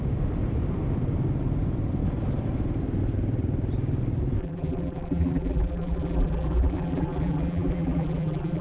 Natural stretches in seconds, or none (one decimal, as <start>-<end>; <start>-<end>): 0.0-4.4